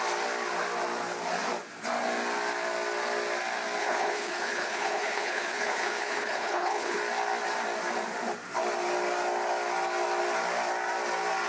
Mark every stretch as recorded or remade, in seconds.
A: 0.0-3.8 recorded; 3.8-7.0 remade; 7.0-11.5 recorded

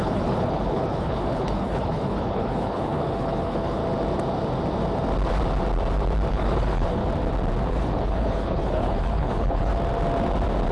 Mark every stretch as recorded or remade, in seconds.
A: 0.0-3.8 remade; 3.8-6.3 recorded; 6.3-7.0 remade; 7.0-7.7 recorded; 7.7-9.7 remade; 9.7-10.7 recorded

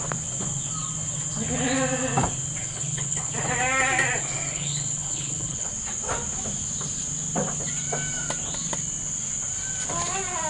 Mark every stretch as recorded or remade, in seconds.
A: 0.0-2.6 recorded; 2.6-3.3 remade; 3.3-4.5 recorded; 4.5-5.7 remade; 5.7-10.5 recorded

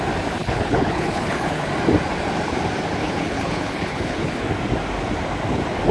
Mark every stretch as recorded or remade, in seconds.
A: 0.0-0.4 recorded; 0.4-1.7 remade; 1.7-3.0 recorded; 3.0-4.3 remade; 4.3-5.9 recorded

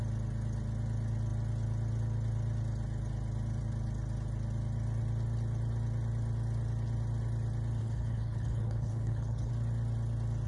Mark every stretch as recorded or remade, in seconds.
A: 0.0-7.8 recorded; 7.8-9.5 remade; 9.5-10.5 recorded